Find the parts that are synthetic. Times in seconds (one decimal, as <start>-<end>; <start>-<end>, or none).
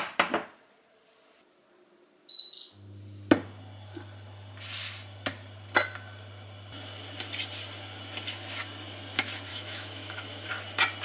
9.5-10.5